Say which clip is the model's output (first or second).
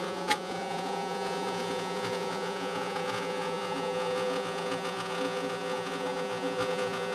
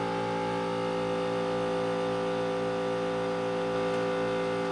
first